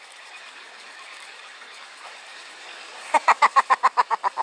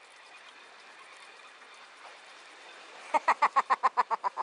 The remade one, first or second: first